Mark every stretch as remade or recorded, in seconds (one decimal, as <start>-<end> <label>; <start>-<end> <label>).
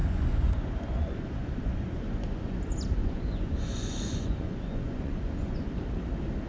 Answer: 0.0-2.6 remade; 2.6-3.0 recorded; 3.0-5.7 remade; 5.7-6.5 recorded